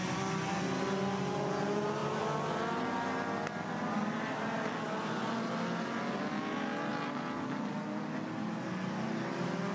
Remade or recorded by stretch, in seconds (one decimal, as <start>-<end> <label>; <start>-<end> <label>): 0.0-9.7 recorded